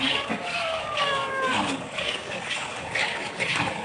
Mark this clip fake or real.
fake